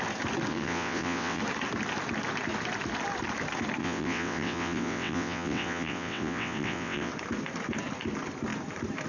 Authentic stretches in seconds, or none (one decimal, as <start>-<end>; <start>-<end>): 0.0-0.5; 1.4-3.8; 7.1-9.1